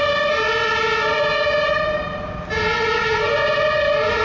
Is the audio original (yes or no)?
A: yes